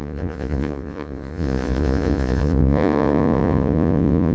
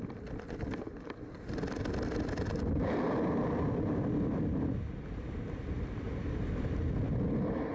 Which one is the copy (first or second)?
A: first